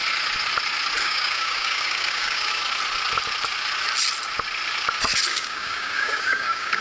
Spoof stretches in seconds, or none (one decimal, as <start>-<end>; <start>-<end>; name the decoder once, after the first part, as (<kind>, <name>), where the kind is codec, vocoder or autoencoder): 1.0-2.6 (codec, DAC); 5.3-6.8